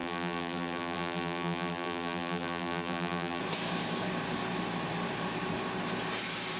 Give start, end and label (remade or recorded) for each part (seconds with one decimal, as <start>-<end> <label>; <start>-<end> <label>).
0.0-3.4 remade; 3.4-6.6 recorded